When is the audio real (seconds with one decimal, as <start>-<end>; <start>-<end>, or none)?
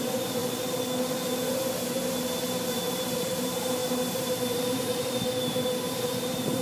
0.4-2.9